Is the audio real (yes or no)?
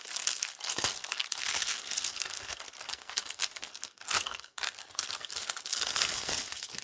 no